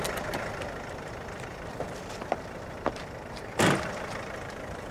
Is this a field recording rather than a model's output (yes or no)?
no